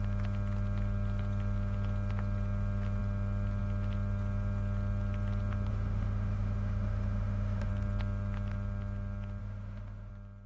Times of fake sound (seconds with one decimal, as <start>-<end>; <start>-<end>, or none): 5.7-7.7; 9.4-10.1